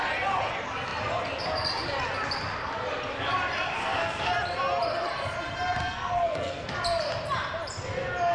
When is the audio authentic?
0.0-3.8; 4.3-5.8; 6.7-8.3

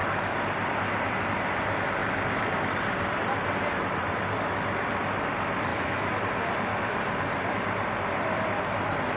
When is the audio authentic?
0.0-5.7; 6.2-9.2

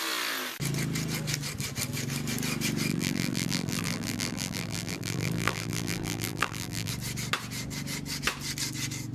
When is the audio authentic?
0.0-2.9; 6.9-9.1

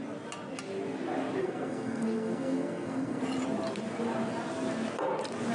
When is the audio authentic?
0.0-1.4; 3.2-5.5